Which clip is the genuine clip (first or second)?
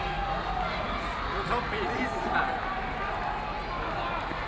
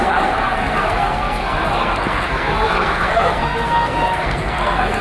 first